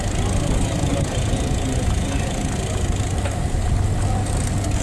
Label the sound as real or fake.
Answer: real